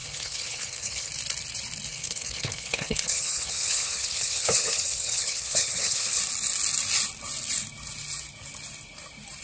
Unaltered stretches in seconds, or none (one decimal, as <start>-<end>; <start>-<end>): 1.1-1.9; 6.2-9.4